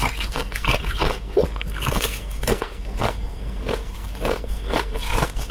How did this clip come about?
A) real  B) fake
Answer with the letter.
B